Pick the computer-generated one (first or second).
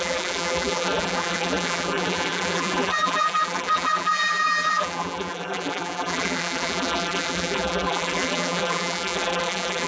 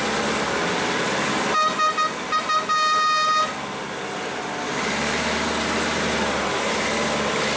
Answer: first